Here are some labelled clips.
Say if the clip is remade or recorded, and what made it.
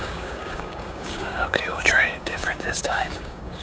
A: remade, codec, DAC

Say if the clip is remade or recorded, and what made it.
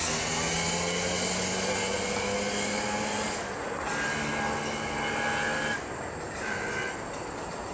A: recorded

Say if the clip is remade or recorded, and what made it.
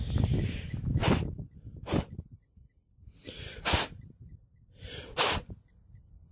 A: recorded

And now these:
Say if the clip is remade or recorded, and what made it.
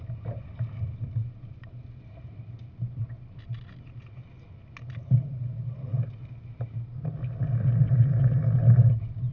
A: recorded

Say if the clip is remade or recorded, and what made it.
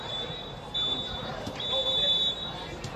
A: recorded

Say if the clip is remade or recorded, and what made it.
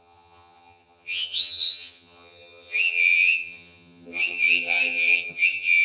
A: remade, vocoder, HiFi-GAN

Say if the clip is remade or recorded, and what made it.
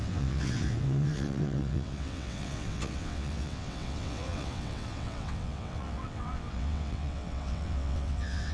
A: remade, vocoder, WaveNeXt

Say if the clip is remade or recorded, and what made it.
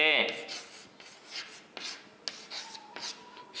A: recorded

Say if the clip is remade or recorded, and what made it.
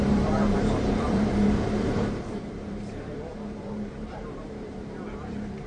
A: remade, vocoder, BigVGAN v2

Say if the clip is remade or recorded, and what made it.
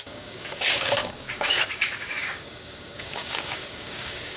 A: remade, codec, DAC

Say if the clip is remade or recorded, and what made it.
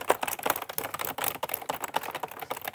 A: recorded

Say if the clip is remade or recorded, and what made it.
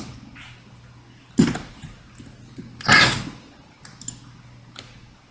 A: recorded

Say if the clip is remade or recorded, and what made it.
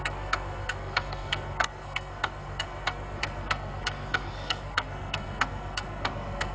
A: remade, codec, SNAC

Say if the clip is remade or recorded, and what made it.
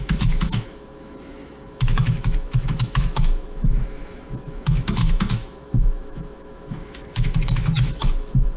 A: remade, autoencoder, DAC-VAE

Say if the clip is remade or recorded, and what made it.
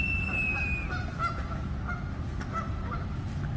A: recorded